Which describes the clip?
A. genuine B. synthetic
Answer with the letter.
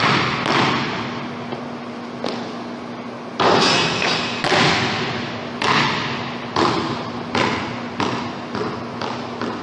A